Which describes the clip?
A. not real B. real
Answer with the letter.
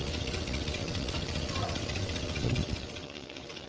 A